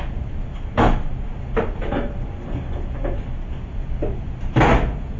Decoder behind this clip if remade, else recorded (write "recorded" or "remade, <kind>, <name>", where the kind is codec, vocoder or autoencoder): recorded